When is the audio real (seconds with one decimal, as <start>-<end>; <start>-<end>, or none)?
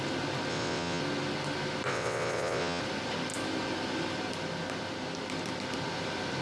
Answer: 0.0-0.5; 1.0-1.9; 2.8-6.4